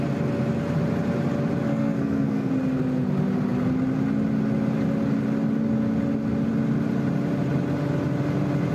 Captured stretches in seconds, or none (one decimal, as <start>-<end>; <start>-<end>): 0.0-1.7; 2.5-8.7